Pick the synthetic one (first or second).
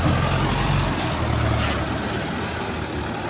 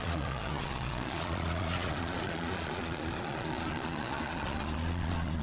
second